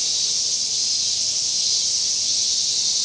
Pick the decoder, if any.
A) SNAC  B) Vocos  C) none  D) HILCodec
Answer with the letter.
C